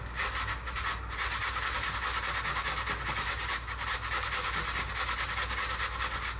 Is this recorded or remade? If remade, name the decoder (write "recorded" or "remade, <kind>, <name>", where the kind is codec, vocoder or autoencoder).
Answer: recorded